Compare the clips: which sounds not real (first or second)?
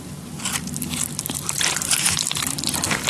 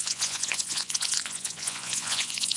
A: second